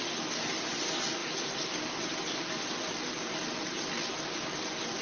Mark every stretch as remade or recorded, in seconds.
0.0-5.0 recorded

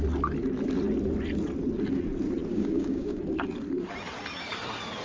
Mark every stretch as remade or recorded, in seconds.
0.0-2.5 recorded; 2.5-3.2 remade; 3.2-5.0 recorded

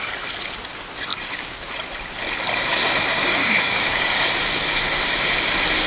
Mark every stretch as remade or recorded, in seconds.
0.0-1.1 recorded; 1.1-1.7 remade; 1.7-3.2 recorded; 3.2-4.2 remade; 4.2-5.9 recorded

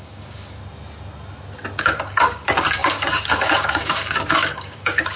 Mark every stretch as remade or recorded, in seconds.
0.0-0.6 remade; 0.6-1.8 recorded; 1.8-5.2 remade

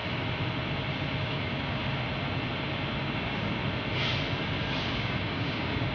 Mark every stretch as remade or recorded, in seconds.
0.0-1.2 recorded; 1.2-1.8 remade; 1.8-3.0 recorded; 3.0-3.6 remade; 3.6-4.9 recorded; 4.9-5.9 remade

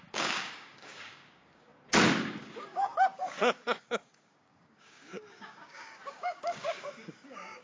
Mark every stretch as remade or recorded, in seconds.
0.0-1.7 remade; 1.7-2.4 recorded; 2.4-7.6 remade